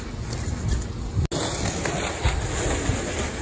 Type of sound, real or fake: real